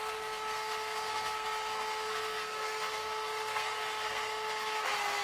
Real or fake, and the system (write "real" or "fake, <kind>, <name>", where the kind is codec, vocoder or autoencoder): fake, codec, SNAC